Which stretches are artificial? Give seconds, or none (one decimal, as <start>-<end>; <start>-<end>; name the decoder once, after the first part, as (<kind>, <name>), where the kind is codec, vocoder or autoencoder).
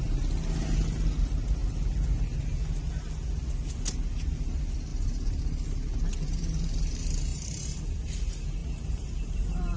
4.9-5.4 (vocoder, BigVGAN v2); 7.3-7.9; 8.6-9.8